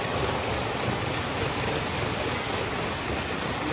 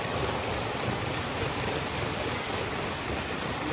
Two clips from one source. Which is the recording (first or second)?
first